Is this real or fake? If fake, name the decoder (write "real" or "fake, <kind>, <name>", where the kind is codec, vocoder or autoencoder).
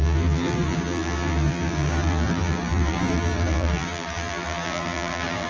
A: fake, vocoder, BigVGAN v2